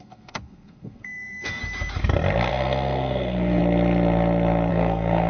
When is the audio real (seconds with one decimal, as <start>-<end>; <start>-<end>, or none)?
1.6-2.5; 3.6-4.7